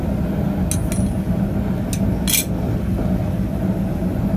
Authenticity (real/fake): real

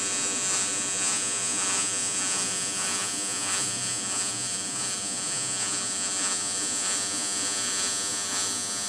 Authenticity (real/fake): fake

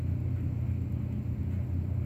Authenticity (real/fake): real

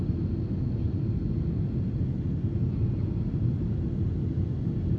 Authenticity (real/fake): real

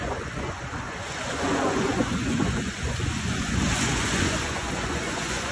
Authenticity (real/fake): fake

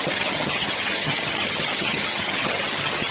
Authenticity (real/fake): fake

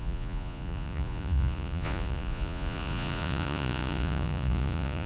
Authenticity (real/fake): fake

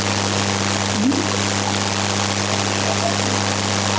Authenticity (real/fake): real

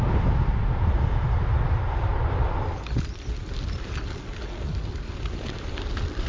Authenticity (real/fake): real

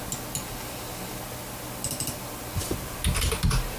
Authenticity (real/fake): real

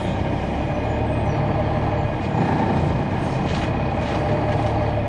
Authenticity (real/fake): real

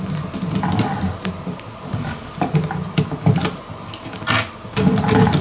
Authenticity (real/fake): real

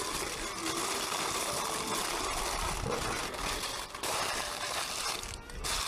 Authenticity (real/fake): real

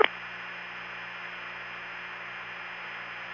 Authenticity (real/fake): real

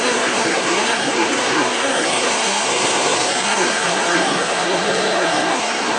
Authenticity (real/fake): fake